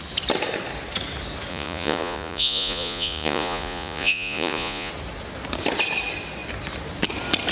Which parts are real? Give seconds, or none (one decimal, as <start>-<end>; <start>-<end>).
0.0-1.5; 4.9-7.5